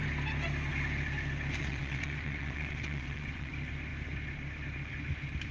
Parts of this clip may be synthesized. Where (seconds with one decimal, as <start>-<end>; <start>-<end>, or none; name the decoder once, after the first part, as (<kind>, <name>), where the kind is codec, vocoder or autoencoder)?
1.6-3.5 (vocoder, WaveNeXt)